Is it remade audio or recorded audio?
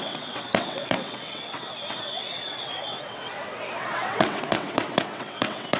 remade